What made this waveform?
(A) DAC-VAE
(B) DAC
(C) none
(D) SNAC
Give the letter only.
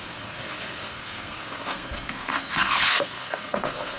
D